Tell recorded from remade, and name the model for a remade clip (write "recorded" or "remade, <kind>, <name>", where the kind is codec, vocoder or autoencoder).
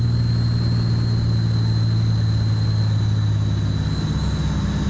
recorded